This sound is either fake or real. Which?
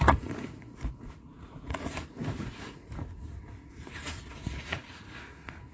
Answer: fake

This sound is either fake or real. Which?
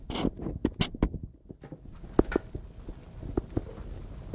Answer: real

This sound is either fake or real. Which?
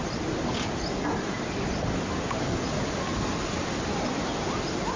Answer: real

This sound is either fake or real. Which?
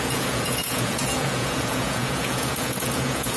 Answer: fake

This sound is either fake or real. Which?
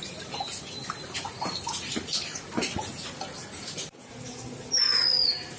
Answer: real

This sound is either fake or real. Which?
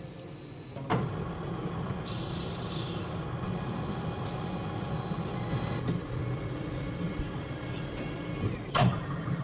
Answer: real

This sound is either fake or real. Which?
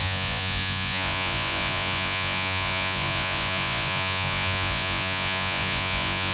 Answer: fake